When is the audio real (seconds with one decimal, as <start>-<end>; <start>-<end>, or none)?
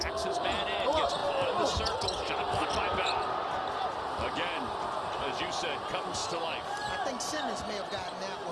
0.0-8.5